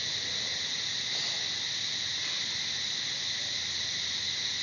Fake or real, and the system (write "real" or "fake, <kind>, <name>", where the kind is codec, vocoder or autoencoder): real